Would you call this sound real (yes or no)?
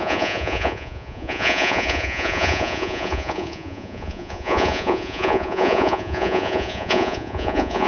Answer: no